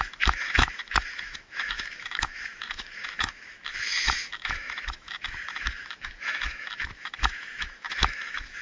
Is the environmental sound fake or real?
fake